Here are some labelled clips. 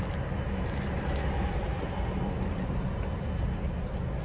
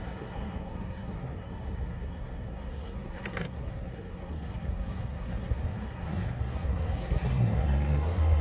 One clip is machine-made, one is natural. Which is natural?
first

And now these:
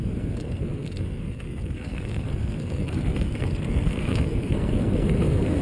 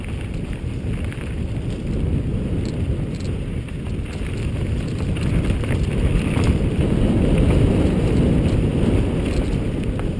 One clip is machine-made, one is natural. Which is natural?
second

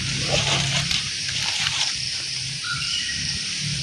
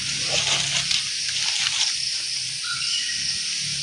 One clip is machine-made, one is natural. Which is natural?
second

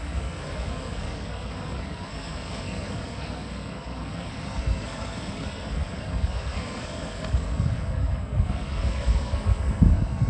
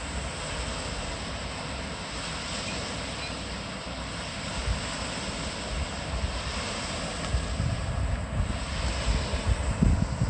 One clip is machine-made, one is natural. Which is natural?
second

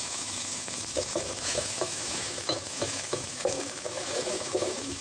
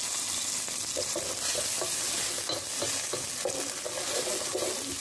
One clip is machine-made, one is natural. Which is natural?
second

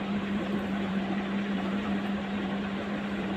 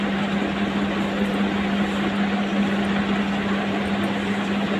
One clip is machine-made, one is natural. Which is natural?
second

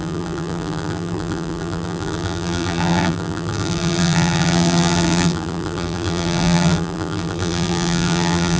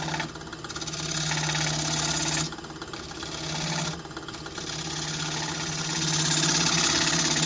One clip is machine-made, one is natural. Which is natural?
second